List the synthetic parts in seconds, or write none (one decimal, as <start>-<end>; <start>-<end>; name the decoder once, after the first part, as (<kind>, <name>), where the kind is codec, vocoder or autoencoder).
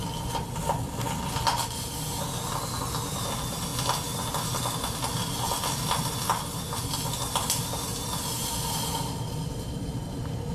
none